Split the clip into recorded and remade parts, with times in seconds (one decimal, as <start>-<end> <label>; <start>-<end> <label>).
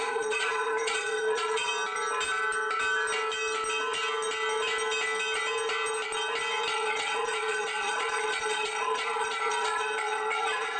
0.0-1.7 remade; 1.7-6.7 recorded; 6.7-10.8 remade